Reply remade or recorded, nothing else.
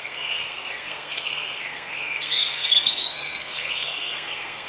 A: remade